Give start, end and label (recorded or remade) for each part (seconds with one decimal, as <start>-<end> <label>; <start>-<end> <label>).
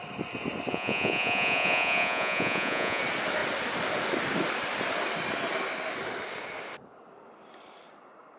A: 0.0-0.7 recorded; 0.7-3.0 remade; 3.0-8.4 recorded